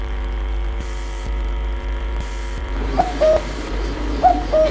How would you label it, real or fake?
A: fake